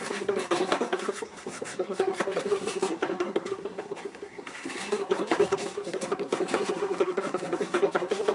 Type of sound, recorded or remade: remade